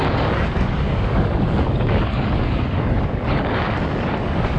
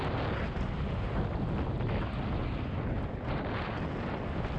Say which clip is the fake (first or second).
first